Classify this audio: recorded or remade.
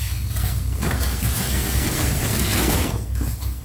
remade